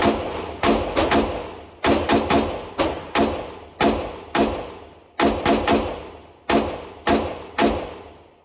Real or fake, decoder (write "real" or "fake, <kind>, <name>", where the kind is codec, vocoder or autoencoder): real